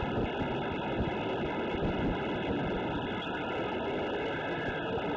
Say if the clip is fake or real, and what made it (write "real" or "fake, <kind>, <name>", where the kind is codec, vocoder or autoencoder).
real